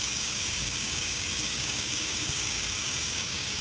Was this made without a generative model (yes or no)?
no